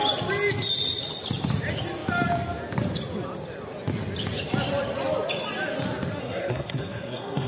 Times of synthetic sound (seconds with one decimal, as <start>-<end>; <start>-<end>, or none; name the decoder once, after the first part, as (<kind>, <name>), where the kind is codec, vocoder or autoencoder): 6.2-7.5 (codec, SNAC)